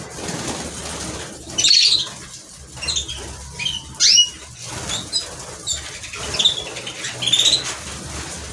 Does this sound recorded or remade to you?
recorded